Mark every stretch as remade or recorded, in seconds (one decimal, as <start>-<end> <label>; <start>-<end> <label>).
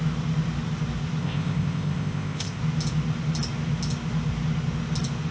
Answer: 0.0-1.2 recorded; 1.2-2.6 remade; 2.6-5.3 recorded